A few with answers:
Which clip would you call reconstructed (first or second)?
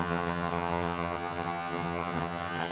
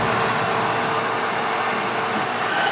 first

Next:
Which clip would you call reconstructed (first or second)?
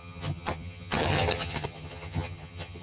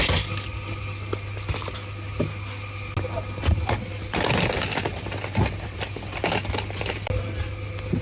first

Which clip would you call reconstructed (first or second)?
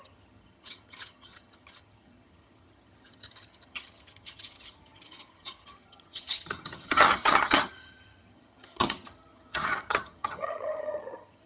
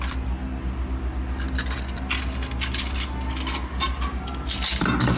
first